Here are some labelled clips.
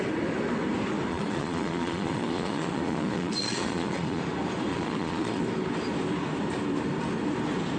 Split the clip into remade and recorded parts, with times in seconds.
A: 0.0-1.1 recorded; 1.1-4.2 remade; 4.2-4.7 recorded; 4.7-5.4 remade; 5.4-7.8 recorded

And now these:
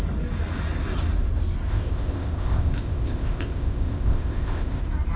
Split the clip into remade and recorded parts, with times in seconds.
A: 0.0-1.7 recorded; 1.7-4.8 remade; 4.8-5.2 recorded